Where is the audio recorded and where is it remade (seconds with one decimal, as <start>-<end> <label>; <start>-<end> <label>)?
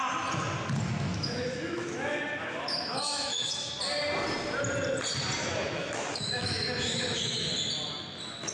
0.0-1.1 recorded; 1.1-3.7 remade; 3.7-5.4 recorded; 5.4-7.5 remade; 7.5-8.5 recorded